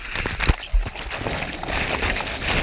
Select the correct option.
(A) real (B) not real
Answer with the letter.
A